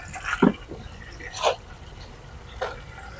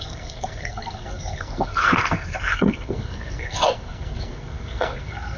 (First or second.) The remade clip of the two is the second